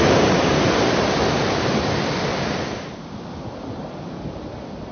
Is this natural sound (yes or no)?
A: yes